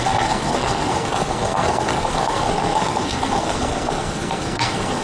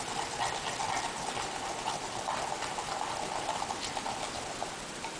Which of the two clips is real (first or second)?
second